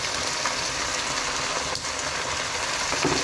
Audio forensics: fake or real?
real